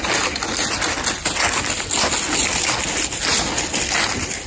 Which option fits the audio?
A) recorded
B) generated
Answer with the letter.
A